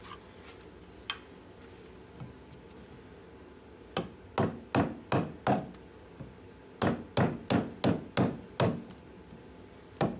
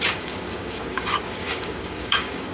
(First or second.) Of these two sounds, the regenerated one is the second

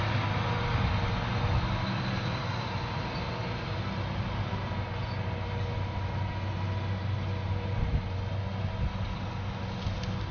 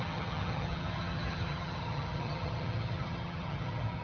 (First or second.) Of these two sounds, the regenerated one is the second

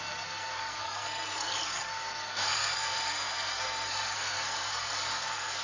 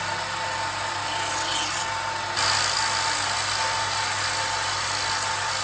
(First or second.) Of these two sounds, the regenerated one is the first